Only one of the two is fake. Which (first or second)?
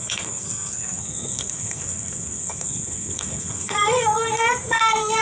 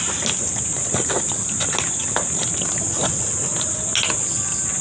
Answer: first